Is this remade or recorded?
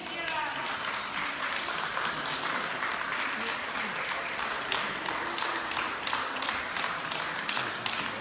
recorded